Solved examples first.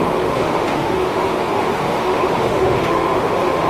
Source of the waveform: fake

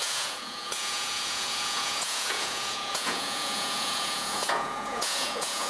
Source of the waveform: fake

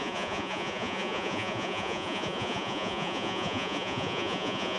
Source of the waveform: fake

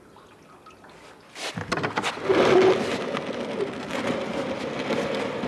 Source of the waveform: real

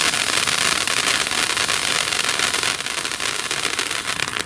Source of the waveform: real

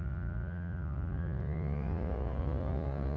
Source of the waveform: fake